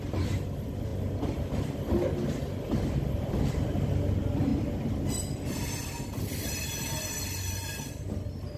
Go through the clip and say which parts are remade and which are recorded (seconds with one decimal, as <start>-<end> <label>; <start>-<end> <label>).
0.0-8.6 recorded